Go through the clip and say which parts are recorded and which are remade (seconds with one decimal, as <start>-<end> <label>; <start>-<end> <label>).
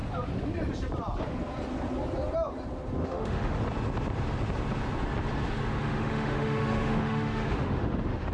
0.0-3.0 recorded; 3.0-3.6 remade; 3.6-5.7 recorded; 5.7-8.3 remade